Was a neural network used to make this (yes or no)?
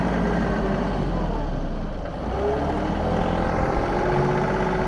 no